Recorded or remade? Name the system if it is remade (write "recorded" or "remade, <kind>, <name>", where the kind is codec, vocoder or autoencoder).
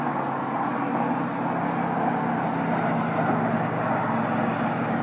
recorded